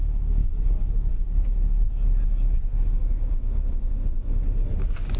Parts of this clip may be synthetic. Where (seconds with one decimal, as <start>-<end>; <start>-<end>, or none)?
none